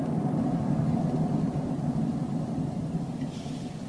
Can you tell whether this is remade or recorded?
recorded